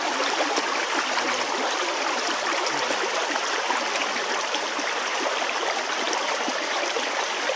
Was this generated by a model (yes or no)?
yes